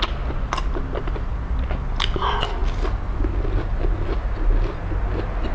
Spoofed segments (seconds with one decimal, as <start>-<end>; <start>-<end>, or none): none